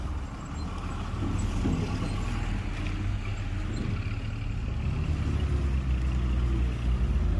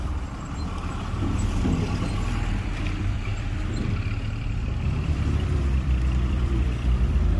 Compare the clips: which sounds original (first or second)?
first